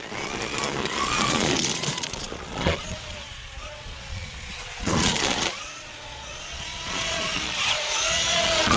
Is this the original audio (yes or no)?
no